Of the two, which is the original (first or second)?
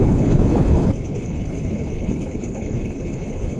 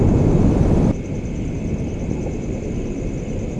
second